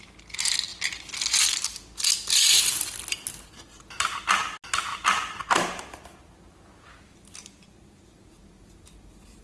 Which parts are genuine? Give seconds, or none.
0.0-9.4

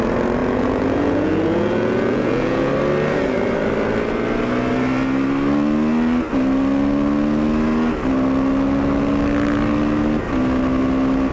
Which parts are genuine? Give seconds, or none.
0.0-0.4; 2.7-11.3

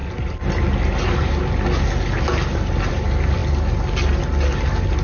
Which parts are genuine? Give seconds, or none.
0.0-5.0

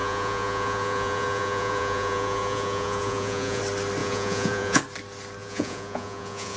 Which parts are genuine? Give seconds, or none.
3.6-4.0; 4.8-5.4

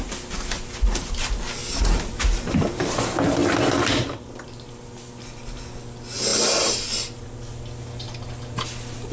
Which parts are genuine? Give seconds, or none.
0.0-9.1

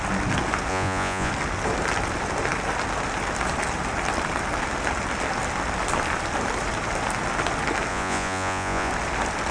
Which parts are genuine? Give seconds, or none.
0.0-0.7; 1.3-7.9; 8.9-9.5